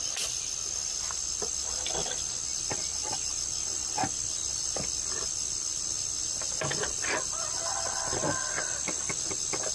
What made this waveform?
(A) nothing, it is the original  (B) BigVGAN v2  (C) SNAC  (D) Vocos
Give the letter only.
A